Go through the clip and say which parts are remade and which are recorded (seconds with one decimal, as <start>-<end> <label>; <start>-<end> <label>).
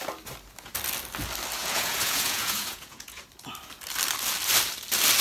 0.0-1.6 recorded; 1.6-3.3 remade; 3.3-5.2 recorded